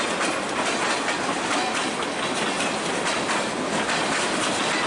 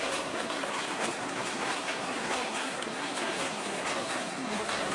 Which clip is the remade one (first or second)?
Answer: second